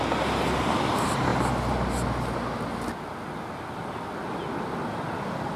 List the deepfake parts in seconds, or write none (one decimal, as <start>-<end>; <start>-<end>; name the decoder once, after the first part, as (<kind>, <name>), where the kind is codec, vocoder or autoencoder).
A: none